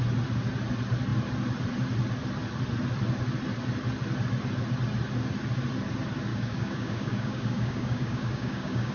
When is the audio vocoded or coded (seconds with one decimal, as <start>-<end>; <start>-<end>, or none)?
6.3-8.9